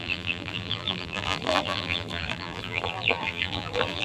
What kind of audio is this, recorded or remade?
remade